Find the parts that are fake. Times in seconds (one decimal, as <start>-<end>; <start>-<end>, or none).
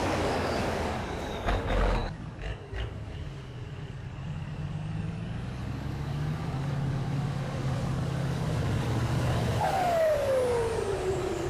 0.0-11.5